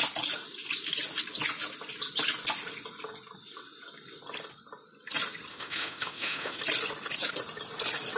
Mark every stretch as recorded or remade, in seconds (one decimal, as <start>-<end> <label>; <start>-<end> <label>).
0.0-5.5 recorded; 5.5-6.6 remade; 6.6-8.2 recorded